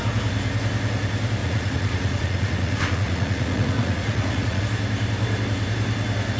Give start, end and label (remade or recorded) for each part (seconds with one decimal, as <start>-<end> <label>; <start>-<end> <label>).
0.0-1.4 recorded; 1.4-4.6 remade; 4.6-6.4 recorded

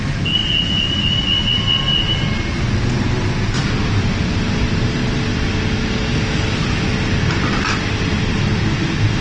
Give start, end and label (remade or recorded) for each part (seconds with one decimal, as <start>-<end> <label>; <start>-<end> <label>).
0.0-9.2 recorded

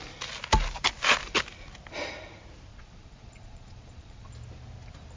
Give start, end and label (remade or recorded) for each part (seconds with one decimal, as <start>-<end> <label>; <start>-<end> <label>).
0.0-2.7 recorded; 2.7-4.3 remade; 4.3-5.2 recorded